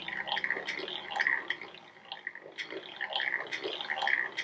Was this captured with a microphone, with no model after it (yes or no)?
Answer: yes